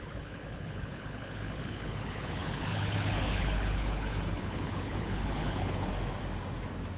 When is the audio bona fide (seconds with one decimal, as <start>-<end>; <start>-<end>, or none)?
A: 5.9-7.0